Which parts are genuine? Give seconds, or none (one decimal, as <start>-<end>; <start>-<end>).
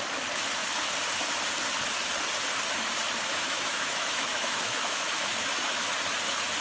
0.0-3.2; 5.9-6.6